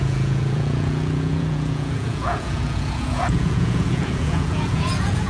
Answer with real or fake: fake